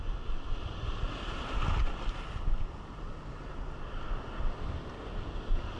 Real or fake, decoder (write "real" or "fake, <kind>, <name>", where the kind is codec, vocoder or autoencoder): real